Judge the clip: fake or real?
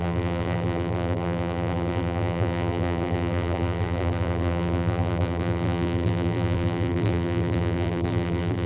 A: fake